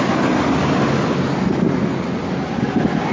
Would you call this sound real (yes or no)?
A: yes